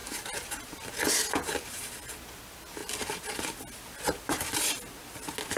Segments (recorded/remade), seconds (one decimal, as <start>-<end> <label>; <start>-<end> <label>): 0.0-5.6 recorded